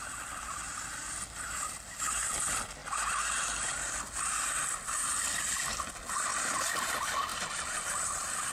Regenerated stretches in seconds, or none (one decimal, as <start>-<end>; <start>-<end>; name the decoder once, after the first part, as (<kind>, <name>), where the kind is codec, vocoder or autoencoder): none